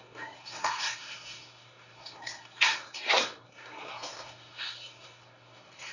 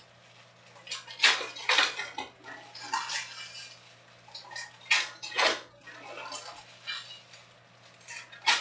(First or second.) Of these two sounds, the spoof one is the first